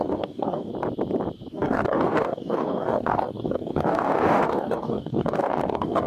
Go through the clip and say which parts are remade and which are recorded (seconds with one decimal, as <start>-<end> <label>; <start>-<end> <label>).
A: 0.0-0.7 remade; 0.7-1.5 recorded; 1.5-6.1 remade